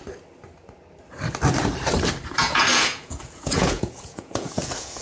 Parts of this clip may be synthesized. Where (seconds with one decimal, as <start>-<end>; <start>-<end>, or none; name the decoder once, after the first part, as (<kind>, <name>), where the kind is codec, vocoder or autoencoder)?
2.3-5.0 (vocoder, Vocos)